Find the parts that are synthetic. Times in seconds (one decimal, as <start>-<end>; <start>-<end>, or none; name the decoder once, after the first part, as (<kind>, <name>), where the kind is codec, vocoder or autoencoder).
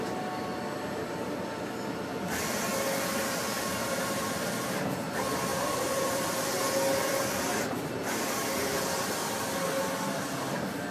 5.5-6.6 (vocoder, BigVGAN v2)